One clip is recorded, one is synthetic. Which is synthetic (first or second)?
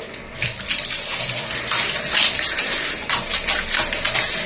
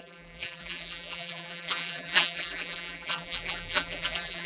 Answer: second